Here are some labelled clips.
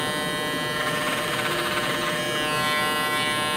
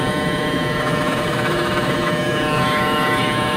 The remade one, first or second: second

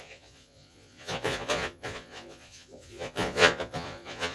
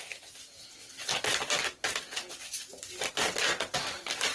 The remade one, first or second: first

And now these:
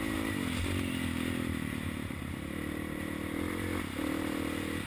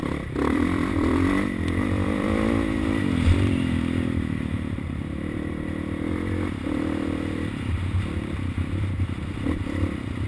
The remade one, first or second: second